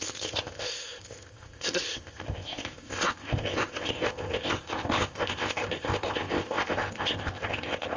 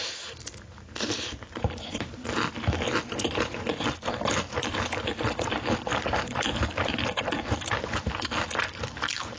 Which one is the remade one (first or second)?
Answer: first